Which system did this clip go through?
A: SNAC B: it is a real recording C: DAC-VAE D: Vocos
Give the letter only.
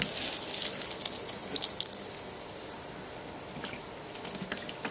B